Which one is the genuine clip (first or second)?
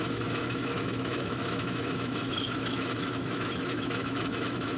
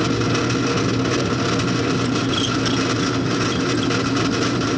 second